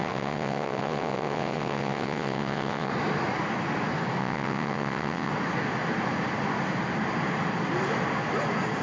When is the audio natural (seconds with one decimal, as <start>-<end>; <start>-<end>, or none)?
2.9-4.2; 5.3-8.8